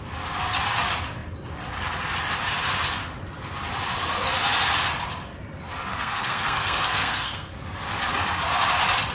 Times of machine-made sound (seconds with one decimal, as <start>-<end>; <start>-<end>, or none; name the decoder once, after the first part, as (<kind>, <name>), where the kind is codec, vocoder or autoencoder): 5.9-7.5 (codec, SNAC)